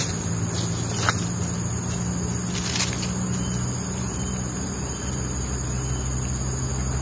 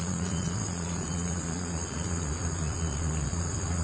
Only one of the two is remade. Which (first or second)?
second